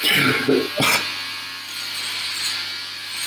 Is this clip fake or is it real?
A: real